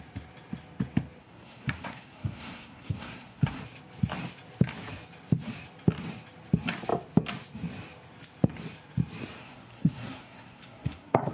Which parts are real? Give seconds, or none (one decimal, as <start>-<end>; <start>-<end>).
0.0-1.2; 3.6-9.4